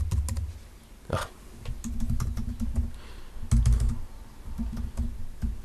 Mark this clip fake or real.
real